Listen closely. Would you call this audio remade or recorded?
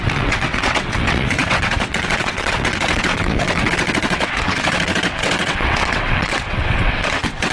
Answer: remade